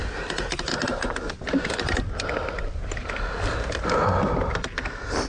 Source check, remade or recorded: recorded